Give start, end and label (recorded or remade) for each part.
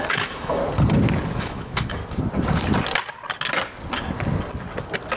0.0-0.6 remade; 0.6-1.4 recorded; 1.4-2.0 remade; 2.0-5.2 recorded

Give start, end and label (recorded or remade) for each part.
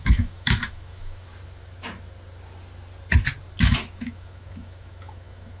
0.0-1.3 remade; 1.3-3.6 recorded; 3.6-5.6 remade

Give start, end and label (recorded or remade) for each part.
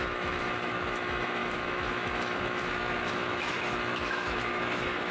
0.0-5.1 remade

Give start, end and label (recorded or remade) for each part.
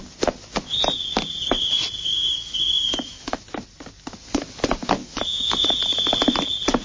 0.0-2.1 recorded; 2.1-3.4 remade; 3.4-5.0 recorded; 5.0-5.8 remade; 5.8-6.8 recorded